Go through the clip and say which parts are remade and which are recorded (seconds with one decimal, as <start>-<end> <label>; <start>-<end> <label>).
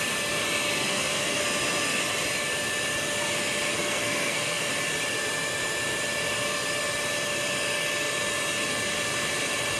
0.0-0.8 recorded; 0.8-1.4 remade; 1.4-3.7 recorded; 3.7-4.7 remade; 4.7-9.8 recorded